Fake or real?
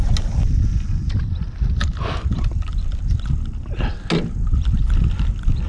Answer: real